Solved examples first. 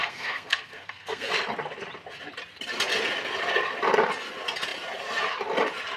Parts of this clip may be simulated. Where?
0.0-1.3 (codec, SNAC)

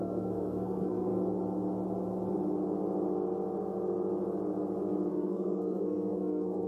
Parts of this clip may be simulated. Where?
0.0-1.1 (codec, SNAC); 5.1-6.7

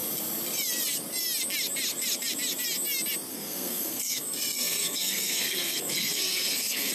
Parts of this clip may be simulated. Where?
3.3-6.9 (codec, SNAC)

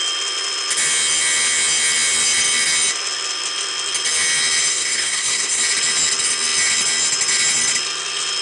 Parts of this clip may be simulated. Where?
4.7-5.6 (codec, SNAC)